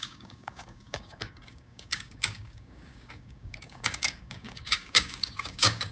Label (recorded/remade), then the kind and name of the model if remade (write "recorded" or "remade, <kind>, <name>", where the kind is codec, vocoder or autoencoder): remade, codec, DAC